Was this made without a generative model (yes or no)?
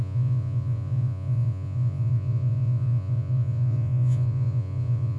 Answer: no